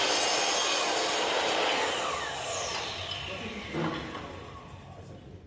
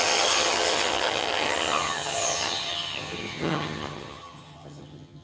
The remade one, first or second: second